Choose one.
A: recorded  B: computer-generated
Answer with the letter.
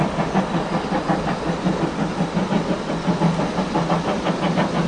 A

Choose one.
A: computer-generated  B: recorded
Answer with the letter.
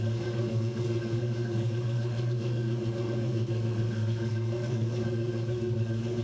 A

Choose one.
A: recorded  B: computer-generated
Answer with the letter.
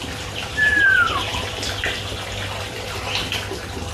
A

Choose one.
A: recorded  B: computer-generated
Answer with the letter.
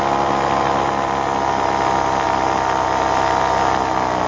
A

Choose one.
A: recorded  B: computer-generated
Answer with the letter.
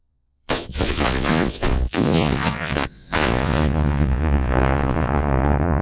B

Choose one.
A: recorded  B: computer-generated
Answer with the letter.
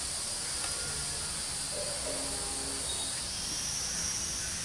A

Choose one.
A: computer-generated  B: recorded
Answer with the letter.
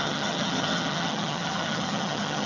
A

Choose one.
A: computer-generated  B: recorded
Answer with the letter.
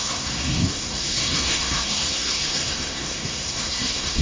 A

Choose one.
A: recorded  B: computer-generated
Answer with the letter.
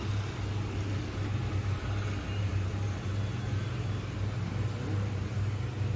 A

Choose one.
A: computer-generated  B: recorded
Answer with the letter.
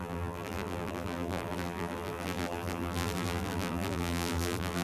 A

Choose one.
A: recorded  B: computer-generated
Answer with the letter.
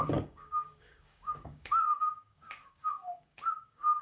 B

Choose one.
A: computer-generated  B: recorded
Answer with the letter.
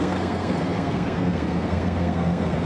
A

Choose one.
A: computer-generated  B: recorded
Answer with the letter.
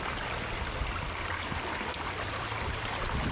B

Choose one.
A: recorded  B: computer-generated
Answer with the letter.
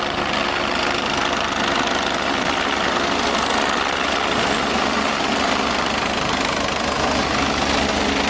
A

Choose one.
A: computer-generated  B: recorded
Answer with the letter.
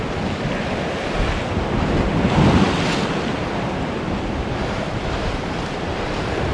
B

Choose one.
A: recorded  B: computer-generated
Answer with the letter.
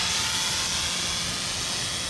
A